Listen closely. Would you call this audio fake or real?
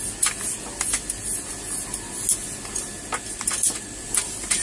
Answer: real